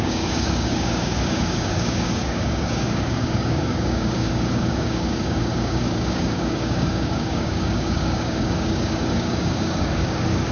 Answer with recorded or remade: remade